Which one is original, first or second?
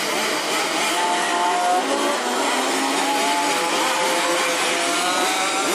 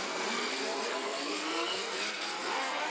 first